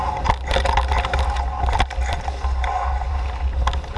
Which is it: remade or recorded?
recorded